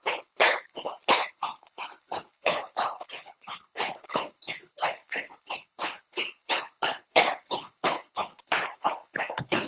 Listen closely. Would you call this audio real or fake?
fake